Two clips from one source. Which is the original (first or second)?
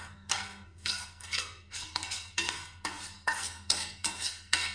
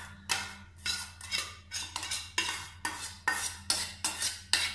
second